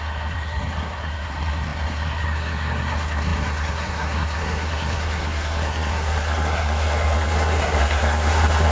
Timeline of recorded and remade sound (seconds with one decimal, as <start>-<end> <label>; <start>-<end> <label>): 0.0-8.7 remade